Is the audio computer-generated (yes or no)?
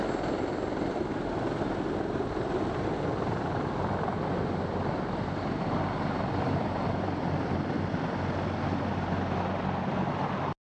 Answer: no